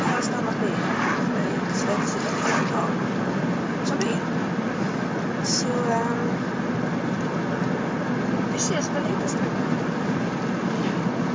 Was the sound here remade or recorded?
recorded